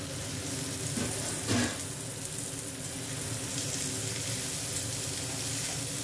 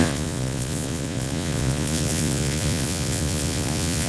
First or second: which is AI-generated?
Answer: second